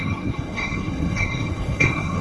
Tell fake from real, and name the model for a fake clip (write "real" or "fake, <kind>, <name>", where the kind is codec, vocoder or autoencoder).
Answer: fake, codec, SNAC